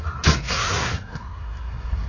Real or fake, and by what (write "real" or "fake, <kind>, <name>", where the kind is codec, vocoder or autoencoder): fake, codec, SNAC